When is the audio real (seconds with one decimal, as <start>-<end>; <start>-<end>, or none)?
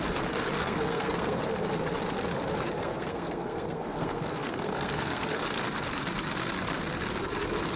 0.0-0.6; 1.4-2.8; 5.4-7.8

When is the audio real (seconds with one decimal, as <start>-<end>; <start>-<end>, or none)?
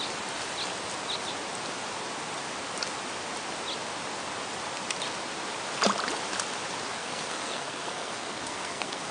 0.0-6.9